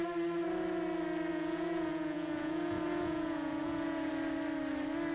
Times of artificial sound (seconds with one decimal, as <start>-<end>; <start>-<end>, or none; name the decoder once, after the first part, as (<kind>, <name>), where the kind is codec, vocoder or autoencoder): 1.3-4.1 (vocoder, Vocos)